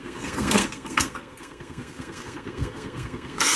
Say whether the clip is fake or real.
fake